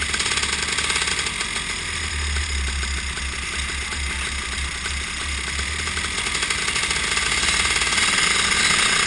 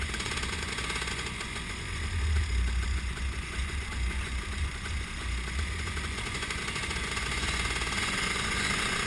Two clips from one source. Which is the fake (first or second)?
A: second